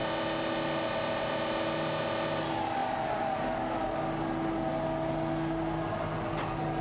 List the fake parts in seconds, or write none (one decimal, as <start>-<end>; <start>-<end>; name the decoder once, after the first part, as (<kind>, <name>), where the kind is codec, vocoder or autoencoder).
none